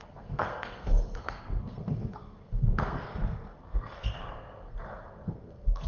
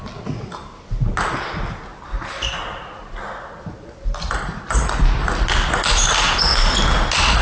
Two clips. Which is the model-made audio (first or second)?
first